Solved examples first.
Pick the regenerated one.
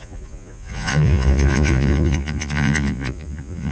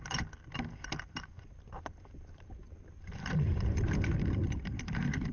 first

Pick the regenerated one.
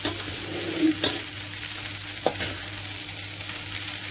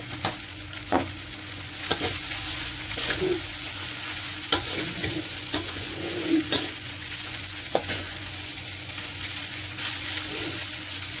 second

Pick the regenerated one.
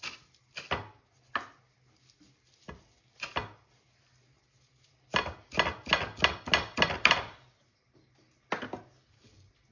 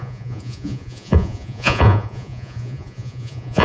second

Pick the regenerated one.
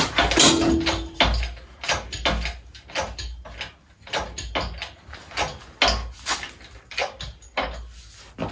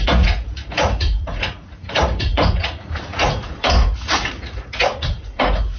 second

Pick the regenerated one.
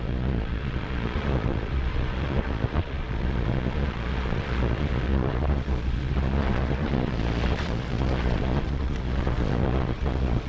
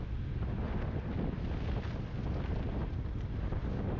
first